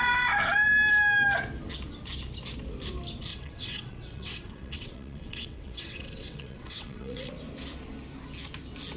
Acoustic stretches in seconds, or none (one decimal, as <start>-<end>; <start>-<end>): 0.0-3.3; 7.3-9.0